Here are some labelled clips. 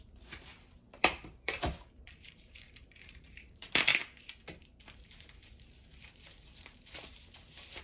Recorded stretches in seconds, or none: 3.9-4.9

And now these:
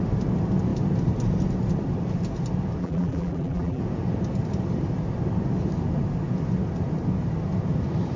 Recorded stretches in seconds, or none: 0.0-2.8; 3.8-8.2

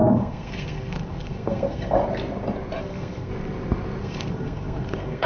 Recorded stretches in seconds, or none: 2.0-2.8; 3.3-4.0

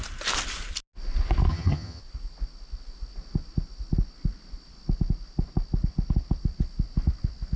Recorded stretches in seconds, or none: 0.0-1.5; 2.0-7.6